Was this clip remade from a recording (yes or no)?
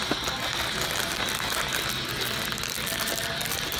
no